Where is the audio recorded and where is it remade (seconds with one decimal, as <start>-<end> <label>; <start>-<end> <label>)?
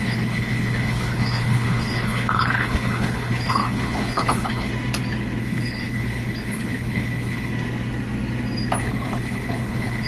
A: 0.0-4.7 remade; 4.7-5.4 recorded; 5.4-7.5 remade; 7.5-8.8 recorded; 8.8-10.1 remade